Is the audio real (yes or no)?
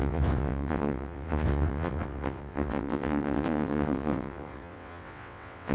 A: no